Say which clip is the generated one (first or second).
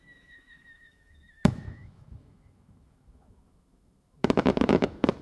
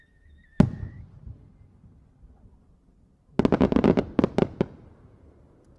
first